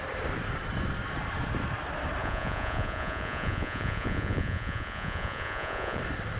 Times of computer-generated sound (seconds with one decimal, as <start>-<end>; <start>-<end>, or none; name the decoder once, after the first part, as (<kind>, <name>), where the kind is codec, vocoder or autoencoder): 2.2-6.0 (vocoder, Vocos)